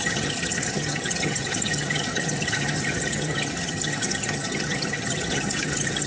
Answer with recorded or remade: remade